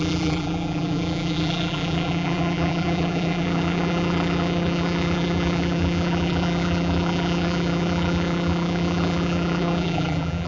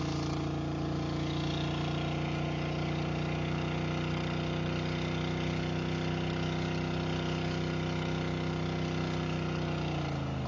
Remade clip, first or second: first